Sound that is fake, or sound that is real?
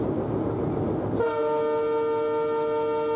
real